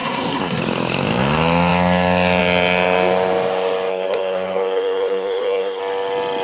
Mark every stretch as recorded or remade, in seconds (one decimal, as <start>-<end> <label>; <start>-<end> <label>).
0.0-0.6 remade; 0.6-3.9 recorded; 3.9-5.8 remade; 5.8-6.4 recorded